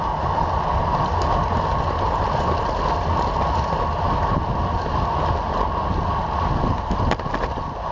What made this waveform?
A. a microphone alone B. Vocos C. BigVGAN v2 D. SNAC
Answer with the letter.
A